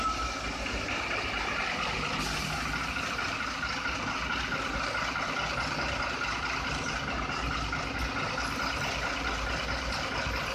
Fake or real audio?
real